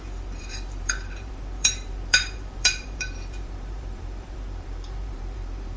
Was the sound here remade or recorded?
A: remade